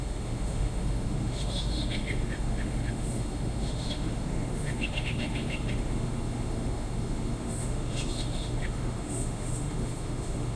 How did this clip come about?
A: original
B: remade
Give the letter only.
B